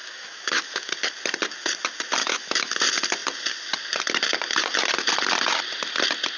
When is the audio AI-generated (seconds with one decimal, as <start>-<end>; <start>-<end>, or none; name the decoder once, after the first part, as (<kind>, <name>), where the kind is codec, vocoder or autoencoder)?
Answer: 0.0-0.9 (autoencoder, DAC-VAE); 2.2-2.8